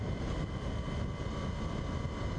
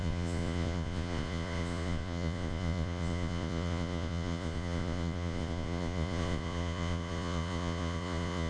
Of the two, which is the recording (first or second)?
first